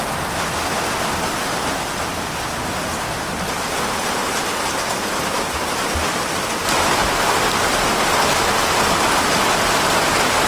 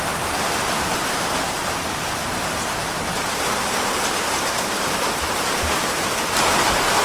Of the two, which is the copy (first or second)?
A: second